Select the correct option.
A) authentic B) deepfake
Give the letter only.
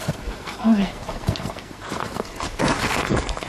B